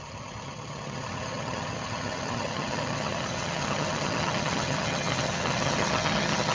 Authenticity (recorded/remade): remade